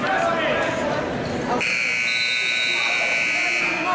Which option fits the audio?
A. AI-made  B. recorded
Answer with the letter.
B